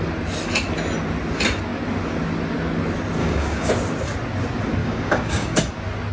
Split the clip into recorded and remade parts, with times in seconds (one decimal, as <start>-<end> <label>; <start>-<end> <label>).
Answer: 0.0-3.2 recorded; 3.2-3.7 remade; 3.7-4.8 recorded; 4.8-5.6 remade; 5.6-6.1 recorded